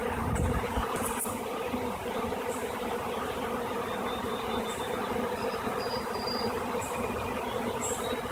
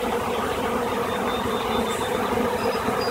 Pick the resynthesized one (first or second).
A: first